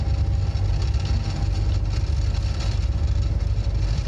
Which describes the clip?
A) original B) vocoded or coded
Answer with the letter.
A